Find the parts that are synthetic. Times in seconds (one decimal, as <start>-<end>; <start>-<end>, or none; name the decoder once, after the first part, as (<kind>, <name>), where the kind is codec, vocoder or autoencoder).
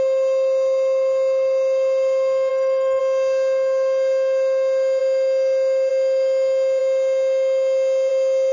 2.5-3.0 (codec, SNAC)